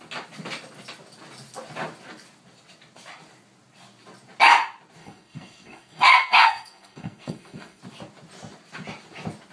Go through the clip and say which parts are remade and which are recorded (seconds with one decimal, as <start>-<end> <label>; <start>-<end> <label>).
0.0-5.0 recorded; 5.0-7.8 remade; 7.8-9.5 recorded